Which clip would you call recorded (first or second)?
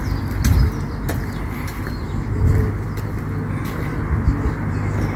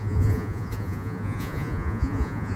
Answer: first